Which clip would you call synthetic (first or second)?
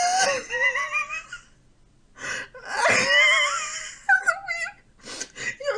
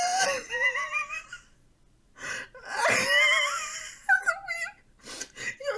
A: second